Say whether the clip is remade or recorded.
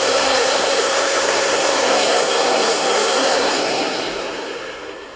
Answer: remade